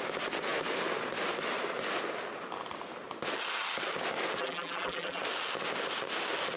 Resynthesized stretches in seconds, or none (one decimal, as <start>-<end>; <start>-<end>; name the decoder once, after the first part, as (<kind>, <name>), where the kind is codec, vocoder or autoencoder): 4.4-5.2 (vocoder, BigVGAN v2)